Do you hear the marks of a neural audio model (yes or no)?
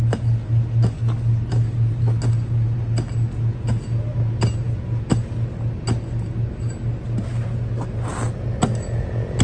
no